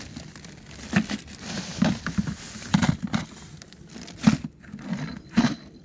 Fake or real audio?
real